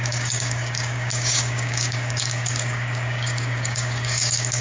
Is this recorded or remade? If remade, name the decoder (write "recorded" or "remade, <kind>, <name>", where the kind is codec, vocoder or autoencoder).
remade, codec, DAC